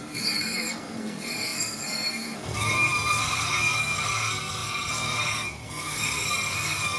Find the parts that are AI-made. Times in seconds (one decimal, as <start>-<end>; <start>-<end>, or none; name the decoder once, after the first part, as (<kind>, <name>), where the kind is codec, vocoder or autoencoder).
0.0-7.0 (codec, SNAC)